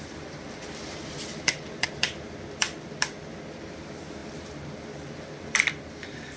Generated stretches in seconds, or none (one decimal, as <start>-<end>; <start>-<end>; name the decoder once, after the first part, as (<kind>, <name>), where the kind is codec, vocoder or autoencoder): 0.0-6.4 (vocoder, BigVGAN v2)